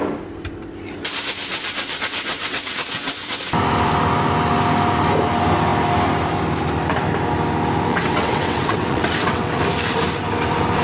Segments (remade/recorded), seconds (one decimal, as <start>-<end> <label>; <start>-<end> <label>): 0.0-2.3 recorded; 2.3-3.4 remade; 3.4-7.9 recorded; 7.9-9.6 remade; 9.6-10.8 recorded